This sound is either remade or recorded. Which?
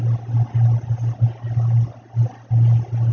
recorded